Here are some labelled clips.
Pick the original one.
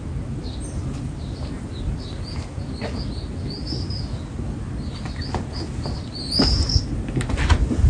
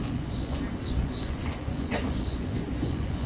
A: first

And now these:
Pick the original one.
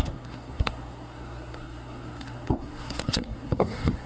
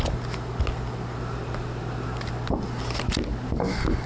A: second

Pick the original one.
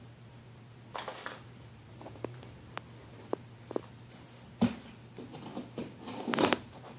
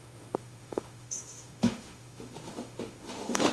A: first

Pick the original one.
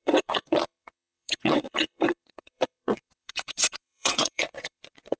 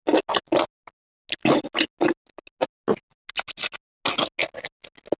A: second